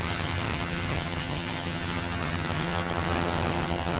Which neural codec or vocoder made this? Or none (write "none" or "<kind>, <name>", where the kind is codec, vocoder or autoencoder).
vocoder, HiFi-GAN